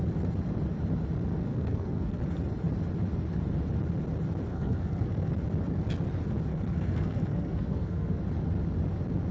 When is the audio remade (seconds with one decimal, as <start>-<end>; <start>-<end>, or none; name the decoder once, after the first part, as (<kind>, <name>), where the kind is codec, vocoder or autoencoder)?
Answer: 1.5-2.2 (codec, SNAC); 4.5-5.3; 6.5-8.2